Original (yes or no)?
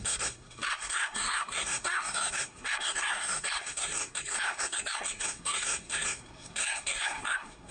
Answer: no